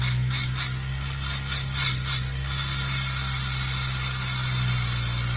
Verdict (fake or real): real